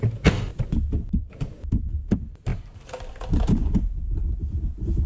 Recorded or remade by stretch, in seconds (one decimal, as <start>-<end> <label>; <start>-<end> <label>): 0.0-5.1 recorded